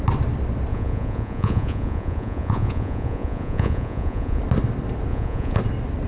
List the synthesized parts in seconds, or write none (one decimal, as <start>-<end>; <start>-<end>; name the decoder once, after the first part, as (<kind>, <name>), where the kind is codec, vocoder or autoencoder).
0.7-4.4 (vocoder, Vocos); 5.1-5.6